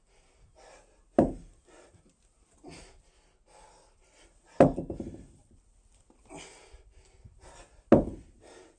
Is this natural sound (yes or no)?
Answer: yes